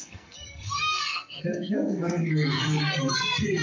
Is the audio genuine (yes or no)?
no